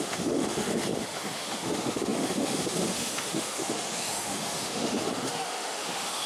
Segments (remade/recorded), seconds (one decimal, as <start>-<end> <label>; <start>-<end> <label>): 0.0-6.3 remade